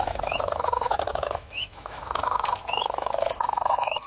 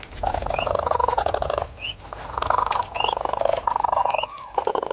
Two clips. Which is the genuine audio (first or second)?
second